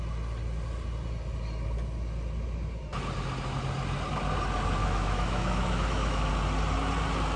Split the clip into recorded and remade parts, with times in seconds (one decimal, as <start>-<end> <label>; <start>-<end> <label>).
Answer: 0.0-4.8 recorded; 4.8-6.3 remade; 6.3-7.4 recorded